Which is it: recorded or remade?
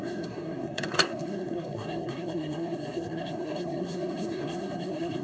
remade